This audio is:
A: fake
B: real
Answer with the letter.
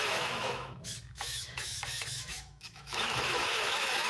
A